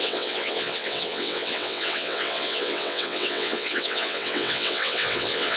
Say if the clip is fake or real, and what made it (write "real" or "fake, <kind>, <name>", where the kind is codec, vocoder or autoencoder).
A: fake, vocoder, WaveNeXt